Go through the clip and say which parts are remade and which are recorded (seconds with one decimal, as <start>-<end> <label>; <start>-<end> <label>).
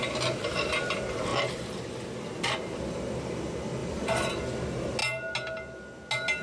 0.0-3.8 recorded; 3.8-4.4 remade; 4.4-6.4 recorded